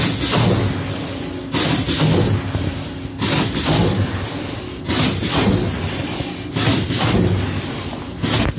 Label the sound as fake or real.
real